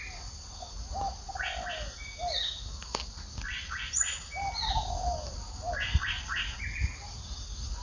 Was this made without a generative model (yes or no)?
yes